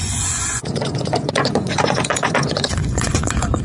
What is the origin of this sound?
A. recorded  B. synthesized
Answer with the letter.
B